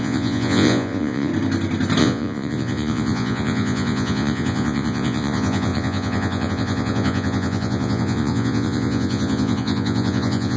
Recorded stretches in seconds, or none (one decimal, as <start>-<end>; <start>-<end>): 1.3-2.0

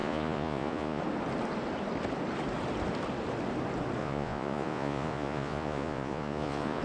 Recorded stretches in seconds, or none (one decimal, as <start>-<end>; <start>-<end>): 1.0-4.0

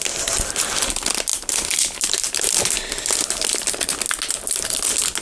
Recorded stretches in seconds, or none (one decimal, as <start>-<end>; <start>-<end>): 0.0-5.2

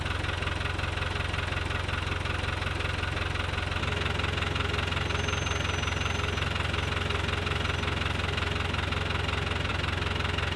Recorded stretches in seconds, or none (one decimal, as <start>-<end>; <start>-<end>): 0.0-10.6

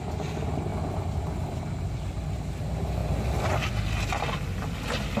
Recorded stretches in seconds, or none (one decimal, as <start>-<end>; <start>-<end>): 0.0-5.2